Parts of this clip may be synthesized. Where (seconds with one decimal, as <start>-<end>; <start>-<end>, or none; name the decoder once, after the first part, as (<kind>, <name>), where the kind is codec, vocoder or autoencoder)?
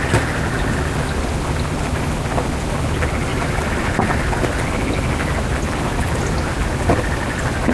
3.3-4.8 (vocoder, BigVGAN v2)